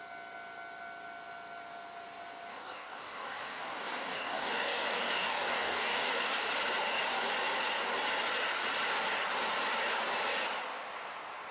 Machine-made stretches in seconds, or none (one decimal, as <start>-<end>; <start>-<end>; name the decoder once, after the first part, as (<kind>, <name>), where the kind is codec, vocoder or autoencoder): 2.5-6.4 (codec, DAC)